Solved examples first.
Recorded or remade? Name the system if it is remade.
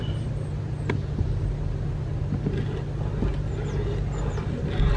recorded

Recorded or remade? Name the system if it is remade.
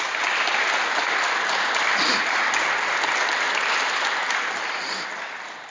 recorded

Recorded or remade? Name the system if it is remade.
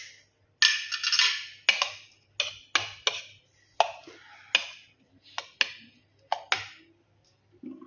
recorded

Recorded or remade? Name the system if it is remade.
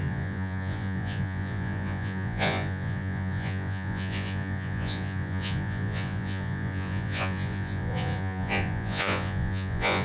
remade, vocoder, Vocos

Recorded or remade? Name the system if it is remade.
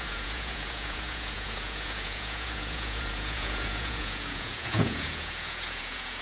remade, vocoder, Vocos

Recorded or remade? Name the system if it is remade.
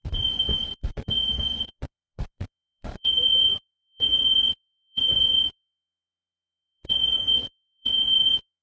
remade, vocoder, Vocos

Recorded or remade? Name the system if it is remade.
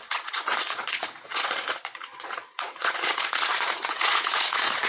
remade, vocoder, Vocos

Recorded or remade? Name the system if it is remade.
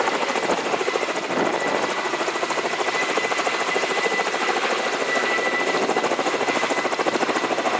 recorded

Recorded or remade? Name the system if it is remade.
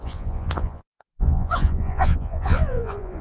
remade, vocoder, Vocos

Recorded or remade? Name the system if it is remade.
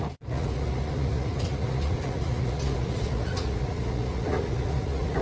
remade, vocoder, Vocos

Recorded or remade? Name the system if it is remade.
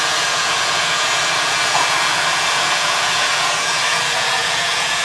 remade, vocoder, Vocos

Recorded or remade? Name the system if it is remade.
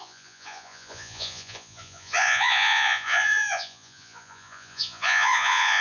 remade, vocoder, Vocos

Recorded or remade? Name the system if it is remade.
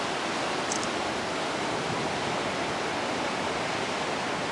recorded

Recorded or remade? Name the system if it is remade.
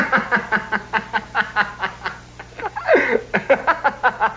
recorded